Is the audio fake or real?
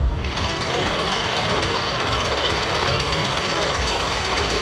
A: fake